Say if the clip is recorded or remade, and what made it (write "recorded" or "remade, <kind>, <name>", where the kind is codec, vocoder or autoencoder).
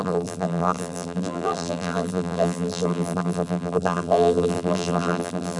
remade, vocoder, BigVGAN v2